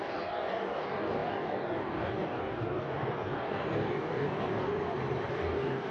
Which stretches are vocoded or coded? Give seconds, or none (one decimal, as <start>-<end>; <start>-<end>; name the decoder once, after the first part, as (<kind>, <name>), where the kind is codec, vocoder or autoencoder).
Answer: 0.0-4.7 (codec, DAC); 5.3-5.9